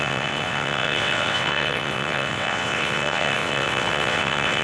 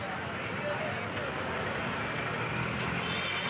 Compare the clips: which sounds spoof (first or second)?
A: first